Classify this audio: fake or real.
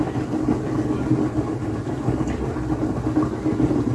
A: real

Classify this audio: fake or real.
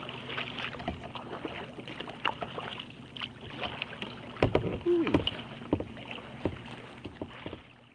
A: real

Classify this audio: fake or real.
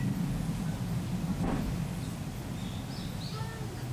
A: real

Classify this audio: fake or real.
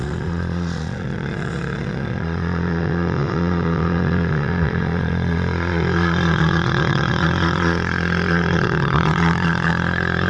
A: fake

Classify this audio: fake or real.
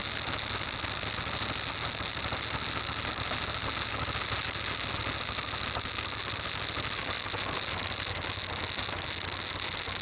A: real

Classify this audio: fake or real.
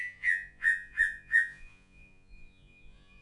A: fake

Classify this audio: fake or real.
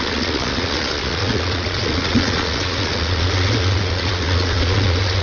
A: fake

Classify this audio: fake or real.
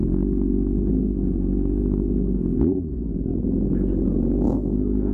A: real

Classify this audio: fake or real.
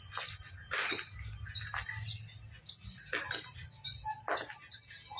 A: real